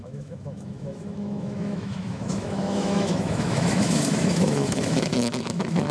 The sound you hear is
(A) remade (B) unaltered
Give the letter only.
A